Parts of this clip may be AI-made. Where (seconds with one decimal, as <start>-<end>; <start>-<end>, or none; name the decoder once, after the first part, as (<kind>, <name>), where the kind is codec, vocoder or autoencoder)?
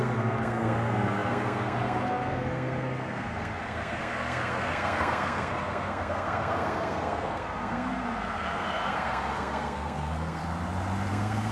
0.0-10.4 (codec, SNAC); 11.1-11.5